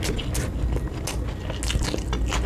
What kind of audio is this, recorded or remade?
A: recorded